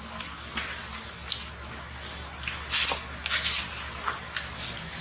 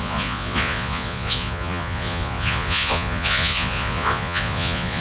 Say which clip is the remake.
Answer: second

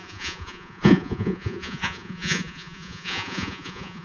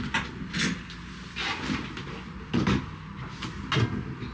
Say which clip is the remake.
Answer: first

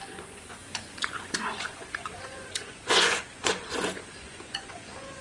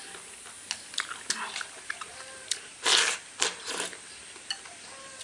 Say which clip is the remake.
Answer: first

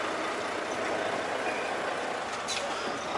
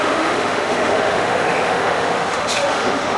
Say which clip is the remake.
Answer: second